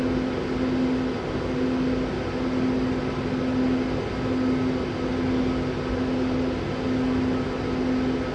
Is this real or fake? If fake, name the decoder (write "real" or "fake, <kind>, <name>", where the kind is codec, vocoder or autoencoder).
real